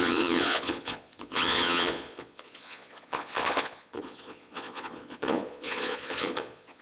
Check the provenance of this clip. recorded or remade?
remade